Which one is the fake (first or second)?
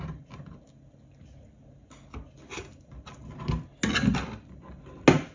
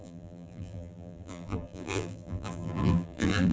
second